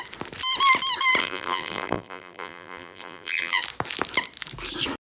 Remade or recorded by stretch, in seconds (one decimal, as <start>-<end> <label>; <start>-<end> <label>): 0.0-1.2 recorded; 1.2-3.6 remade; 3.6-5.1 recorded